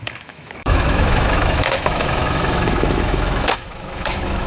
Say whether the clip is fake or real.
fake